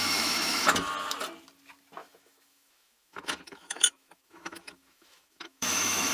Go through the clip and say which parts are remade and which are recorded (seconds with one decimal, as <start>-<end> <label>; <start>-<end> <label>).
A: 0.0-0.9 remade; 0.9-2.0 recorded; 2.0-6.1 remade